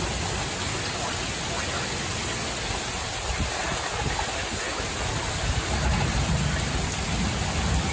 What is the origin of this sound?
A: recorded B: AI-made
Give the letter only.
A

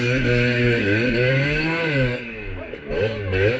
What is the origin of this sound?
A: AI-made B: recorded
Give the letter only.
A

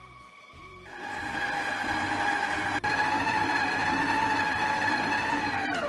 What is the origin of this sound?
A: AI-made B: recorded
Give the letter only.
A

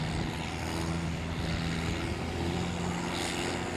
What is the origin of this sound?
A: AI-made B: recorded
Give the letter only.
B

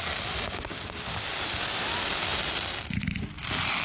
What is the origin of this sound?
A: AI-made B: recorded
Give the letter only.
B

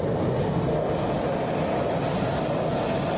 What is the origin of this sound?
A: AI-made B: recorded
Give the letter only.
B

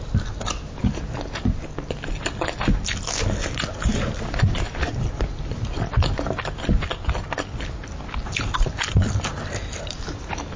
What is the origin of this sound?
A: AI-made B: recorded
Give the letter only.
B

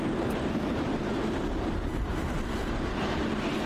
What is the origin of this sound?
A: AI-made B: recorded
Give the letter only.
A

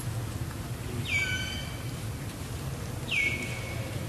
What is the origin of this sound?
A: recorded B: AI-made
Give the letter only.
A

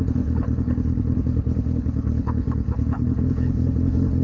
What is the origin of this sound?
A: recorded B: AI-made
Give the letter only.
B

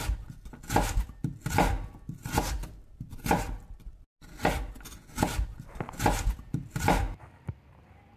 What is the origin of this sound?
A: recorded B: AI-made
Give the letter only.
A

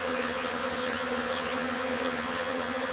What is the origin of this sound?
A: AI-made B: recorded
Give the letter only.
A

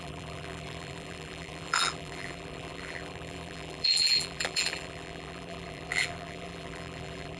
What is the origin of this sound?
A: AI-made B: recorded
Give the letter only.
A